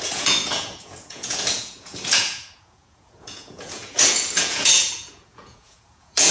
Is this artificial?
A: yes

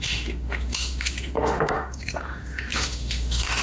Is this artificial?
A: yes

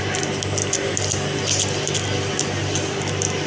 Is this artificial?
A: no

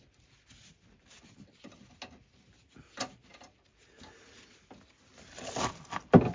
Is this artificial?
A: no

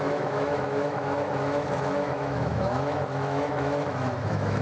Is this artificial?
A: yes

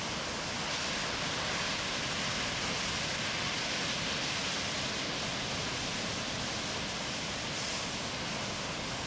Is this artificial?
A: no